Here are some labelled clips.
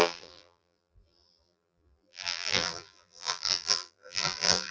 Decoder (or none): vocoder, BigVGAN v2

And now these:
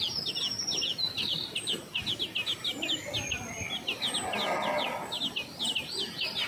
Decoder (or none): none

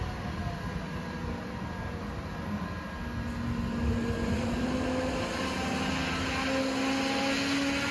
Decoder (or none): none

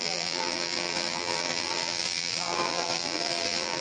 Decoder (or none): vocoder, BigVGAN v2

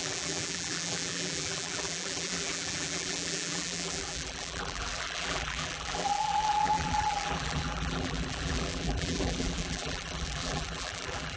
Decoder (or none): vocoder, BigVGAN v2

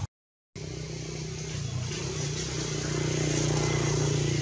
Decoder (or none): none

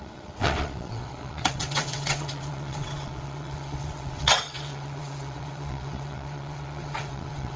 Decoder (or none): vocoder, WaveNeXt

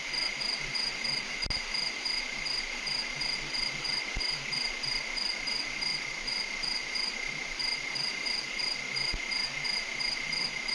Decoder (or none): none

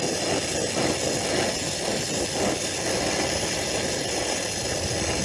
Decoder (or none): none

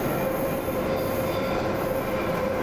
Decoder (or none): none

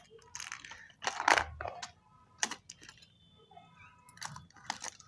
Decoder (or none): none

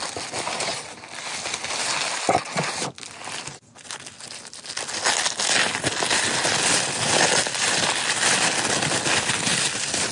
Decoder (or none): none